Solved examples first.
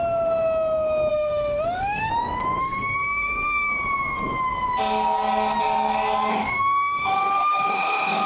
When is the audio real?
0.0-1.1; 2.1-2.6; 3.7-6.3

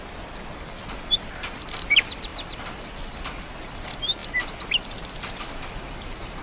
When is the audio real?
0.0-6.4